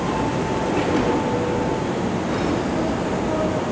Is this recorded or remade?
recorded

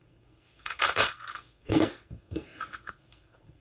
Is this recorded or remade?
remade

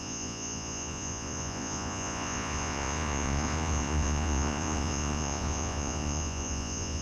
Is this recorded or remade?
remade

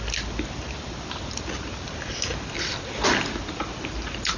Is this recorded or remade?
recorded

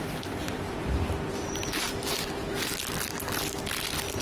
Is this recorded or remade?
recorded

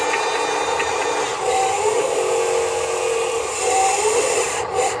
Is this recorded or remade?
remade